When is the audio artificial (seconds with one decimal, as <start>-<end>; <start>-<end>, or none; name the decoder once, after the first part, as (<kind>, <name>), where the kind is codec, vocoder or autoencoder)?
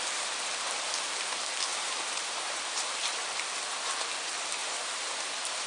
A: 1.7-3.4 (vocoder, BigVGAN v2); 4.6-5.1